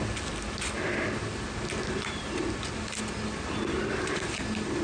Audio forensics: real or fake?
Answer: real